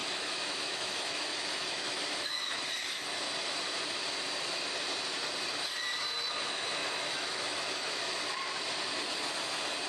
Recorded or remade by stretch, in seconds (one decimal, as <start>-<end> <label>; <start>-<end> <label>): 0.0-2.6 remade; 2.6-6.8 recorded; 6.8-8.2 remade; 8.2-9.9 recorded